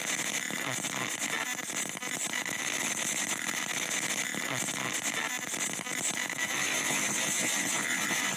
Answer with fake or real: real